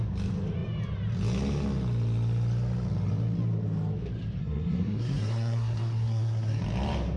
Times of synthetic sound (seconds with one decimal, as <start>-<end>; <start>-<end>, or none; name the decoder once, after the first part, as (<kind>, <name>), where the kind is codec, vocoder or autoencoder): 4.4-6.6 (codec, SNAC)